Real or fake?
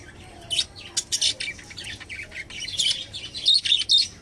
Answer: real